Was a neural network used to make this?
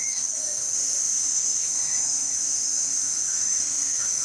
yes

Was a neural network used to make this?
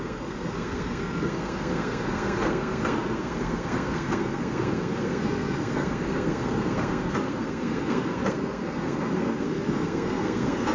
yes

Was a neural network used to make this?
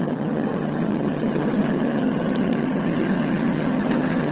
yes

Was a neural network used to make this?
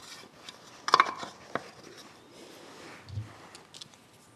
no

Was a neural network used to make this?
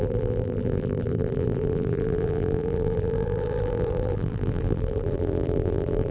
yes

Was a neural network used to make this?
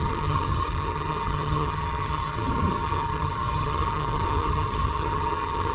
yes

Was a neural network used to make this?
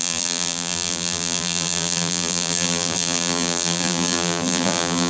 yes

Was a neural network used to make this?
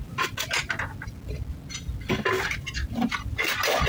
no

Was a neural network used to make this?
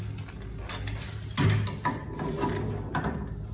no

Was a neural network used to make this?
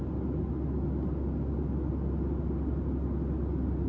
no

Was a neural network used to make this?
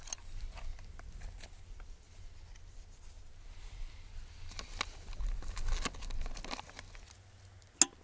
no